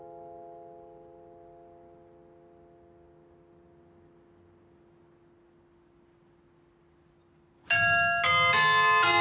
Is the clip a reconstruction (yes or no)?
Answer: no